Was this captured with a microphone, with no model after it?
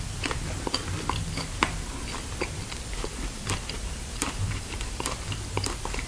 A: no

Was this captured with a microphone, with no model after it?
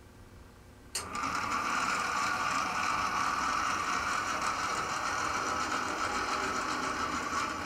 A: no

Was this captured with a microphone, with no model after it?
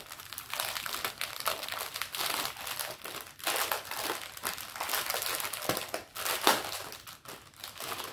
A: yes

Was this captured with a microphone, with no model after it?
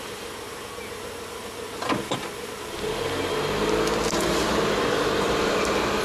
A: yes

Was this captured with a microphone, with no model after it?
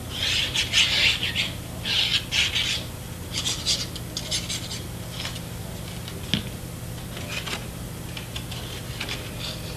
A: yes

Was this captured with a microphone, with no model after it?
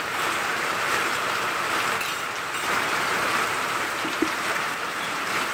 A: no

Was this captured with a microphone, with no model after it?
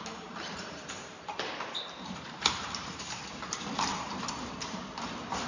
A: no